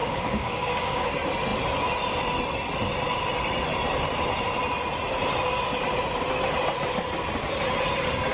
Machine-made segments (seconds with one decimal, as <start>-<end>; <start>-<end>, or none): 0.0-1.1